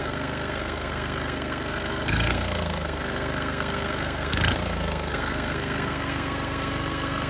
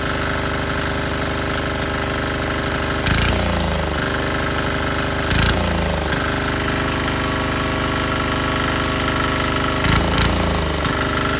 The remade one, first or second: first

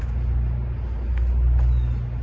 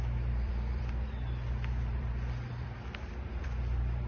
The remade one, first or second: second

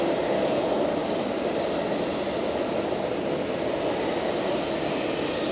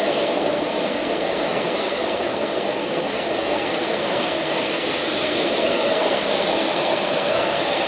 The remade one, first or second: second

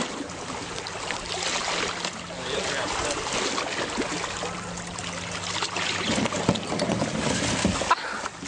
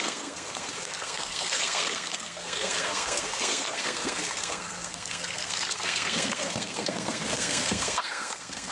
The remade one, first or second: second